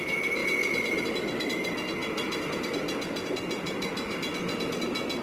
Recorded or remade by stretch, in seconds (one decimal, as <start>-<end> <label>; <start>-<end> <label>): 0.0-5.2 recorded